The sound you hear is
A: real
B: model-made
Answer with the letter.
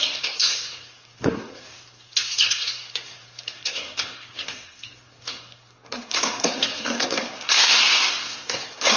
B